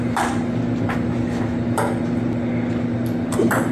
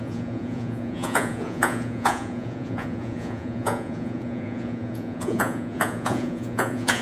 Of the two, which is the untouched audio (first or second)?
first